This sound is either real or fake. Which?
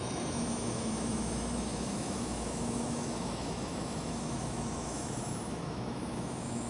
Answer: fake